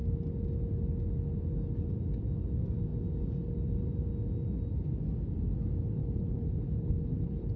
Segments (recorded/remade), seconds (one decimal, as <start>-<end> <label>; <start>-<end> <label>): 0.0-6.0 recorded; 6.0-7.6 remade